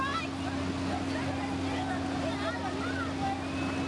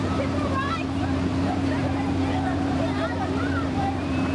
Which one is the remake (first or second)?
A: second